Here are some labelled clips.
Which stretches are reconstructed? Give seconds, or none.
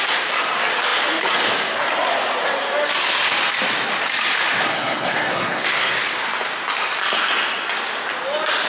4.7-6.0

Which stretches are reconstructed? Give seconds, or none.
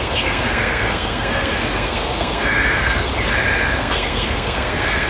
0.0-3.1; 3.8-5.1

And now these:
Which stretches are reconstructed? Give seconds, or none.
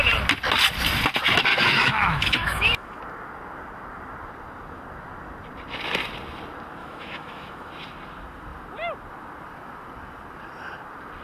1.5-3.0; 6.8-7.7